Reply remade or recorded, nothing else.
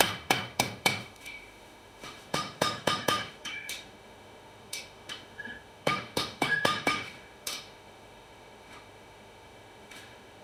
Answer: remade